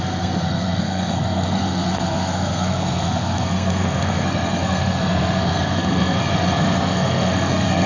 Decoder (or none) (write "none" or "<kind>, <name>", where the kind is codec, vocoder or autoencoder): codec, SNAC